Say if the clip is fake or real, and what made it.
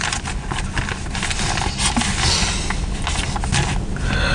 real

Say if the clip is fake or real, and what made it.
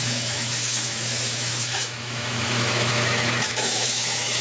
fake, autoencoder, DAC-VAE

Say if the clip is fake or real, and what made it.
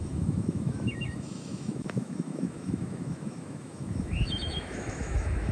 fake, autoencoder, DAC-VAE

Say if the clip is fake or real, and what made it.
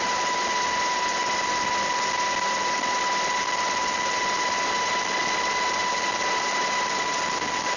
real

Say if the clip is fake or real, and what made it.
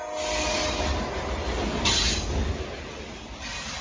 real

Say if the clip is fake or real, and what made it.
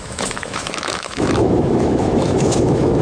fake, autoencoder, DAC-VAE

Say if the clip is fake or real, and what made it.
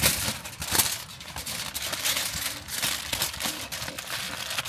real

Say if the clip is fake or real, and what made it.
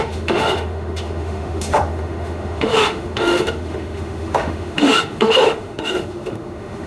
fake, autoencoder, DAC-VAE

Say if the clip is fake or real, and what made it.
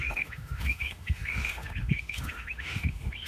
fake, autoencoder, DAC-VAE